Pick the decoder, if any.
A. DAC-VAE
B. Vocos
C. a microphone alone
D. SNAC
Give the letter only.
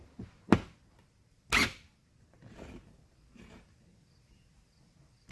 C